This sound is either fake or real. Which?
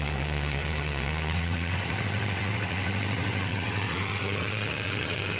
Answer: fake